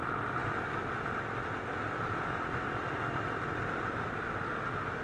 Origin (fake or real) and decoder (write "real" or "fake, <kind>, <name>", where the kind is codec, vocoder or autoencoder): real